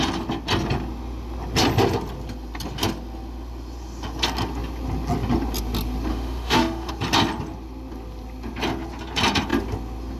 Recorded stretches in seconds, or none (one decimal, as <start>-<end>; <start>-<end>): 0.0-6.1; 6.9-10.2